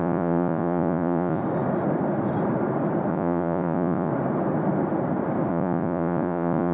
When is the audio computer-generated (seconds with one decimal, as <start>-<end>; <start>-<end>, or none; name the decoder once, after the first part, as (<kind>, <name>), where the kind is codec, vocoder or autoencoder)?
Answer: 0.0-1.4 (vocoder, Vocos); 3.1-4.1; 5.5-6.7

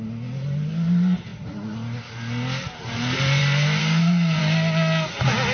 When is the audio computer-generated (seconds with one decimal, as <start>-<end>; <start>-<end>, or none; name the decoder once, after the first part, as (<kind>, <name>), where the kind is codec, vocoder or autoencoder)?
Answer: 3.8-4.4 (codec, SNAC)

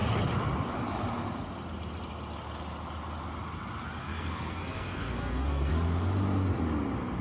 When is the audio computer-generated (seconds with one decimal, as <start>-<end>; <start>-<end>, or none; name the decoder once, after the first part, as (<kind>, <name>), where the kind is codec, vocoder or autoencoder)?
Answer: 4.0-5.7 (codec, SNAC)

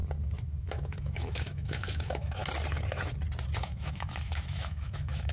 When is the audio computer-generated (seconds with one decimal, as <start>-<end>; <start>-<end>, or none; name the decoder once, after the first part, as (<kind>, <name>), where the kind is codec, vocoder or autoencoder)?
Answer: 0.6-2.4 (autoencoder, DAC-VAE); 3.6-5.3

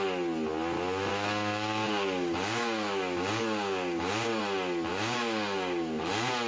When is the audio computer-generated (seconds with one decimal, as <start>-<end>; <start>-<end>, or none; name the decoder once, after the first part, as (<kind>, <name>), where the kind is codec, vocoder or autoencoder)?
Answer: 1.1-4.4 (codec, DAC); 4.9-6.1